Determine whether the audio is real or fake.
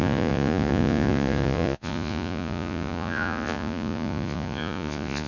fake